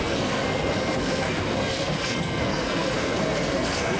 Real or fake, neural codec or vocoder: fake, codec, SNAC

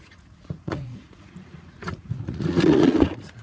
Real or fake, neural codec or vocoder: fake, vocoder, Vocos